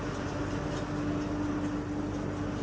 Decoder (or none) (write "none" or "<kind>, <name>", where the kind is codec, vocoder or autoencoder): none